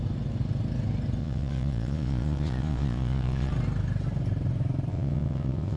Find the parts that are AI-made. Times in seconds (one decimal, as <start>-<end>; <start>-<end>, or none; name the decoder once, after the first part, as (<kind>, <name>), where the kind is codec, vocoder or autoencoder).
1.2-3.5 (vocoder, Vocos); 4.9-5.8